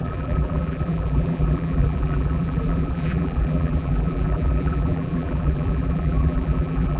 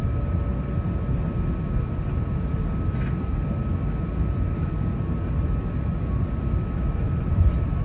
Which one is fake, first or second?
first